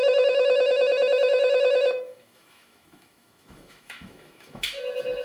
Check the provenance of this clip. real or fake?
fake